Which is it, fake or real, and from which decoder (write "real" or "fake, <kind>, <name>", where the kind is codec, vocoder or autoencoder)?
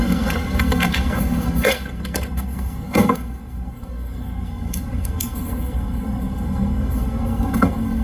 fake, codec, SNAC